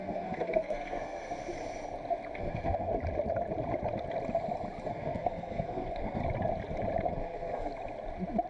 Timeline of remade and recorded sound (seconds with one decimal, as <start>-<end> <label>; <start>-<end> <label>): 0.0-1.4 remade; 1.4-2.4 recorded; 2.4-2.9 remade; 2.9-4.9 recorded; 4.9-6.2 remade; 6.2-7.1 recorded; 7.1-7.7 remade; 7.7-8.5 recorded